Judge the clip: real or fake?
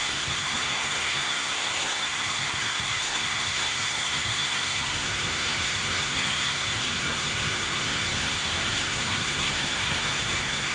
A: fake